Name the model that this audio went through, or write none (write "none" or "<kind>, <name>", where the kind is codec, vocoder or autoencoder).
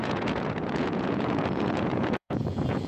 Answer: vocoder, Vocos